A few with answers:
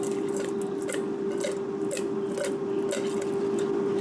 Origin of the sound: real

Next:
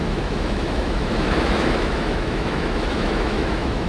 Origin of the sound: fake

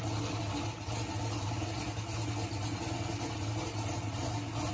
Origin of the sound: real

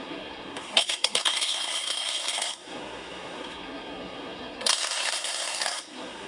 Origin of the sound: fake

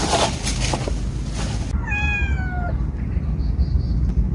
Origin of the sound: real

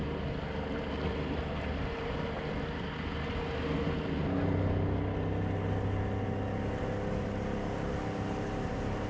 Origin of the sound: real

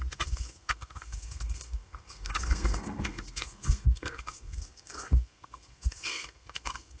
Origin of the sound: fake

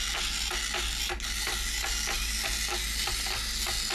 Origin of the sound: real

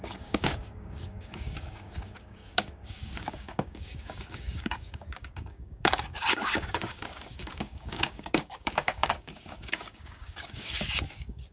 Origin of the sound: fake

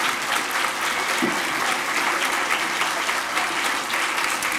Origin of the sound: real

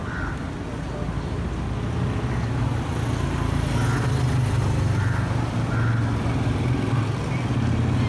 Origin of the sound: real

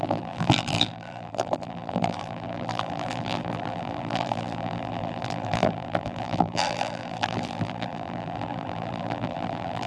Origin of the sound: fake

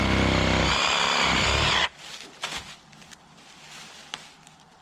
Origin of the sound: real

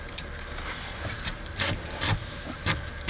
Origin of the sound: real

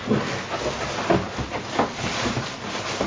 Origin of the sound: real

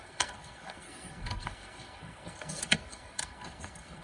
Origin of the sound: fake